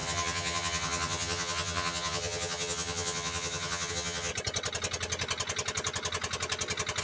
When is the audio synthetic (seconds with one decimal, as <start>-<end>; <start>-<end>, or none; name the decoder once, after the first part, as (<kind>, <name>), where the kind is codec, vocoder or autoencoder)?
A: 0.0-4.3 (vocoder, HiFi-GAN)